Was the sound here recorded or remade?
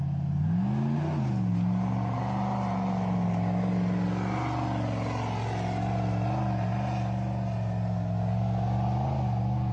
recorded